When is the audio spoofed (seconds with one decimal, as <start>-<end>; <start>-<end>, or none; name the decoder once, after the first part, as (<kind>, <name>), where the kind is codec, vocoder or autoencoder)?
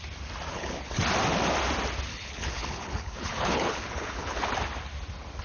0.5-1.0 (codec, HILCodec); 2.1-4.5